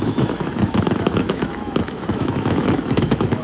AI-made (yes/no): yes